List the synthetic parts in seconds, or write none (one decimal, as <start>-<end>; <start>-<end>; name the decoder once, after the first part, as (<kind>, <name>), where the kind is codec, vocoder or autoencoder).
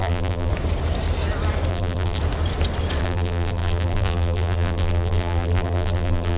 0.0-0.5 (vocoder, BigVGAN v2); 1.7-2.2; 3.0-6.4